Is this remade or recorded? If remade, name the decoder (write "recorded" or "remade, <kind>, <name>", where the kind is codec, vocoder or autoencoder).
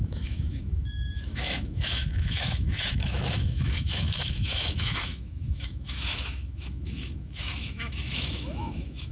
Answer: remade, autoencoder, DAC-VAE